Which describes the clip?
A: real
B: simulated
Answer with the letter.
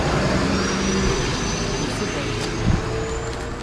A